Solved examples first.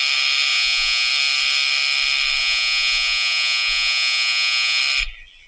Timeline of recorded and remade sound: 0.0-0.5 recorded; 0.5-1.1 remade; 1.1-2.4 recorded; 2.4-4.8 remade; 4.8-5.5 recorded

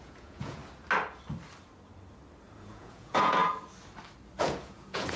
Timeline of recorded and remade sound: 0.0-0.6 remade; 0.6-2.6 recorded; 2.6-3.4 remade; 3.4-4.4 recorded; 4.4-5.2 remade

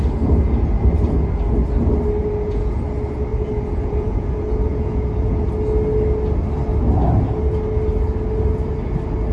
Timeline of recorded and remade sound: 0.0-2.2 recorded; 2.2-2.8 remade; 2.8-3.3 recorded; 3.3-5.5 remade; 5.5-9.3 recorded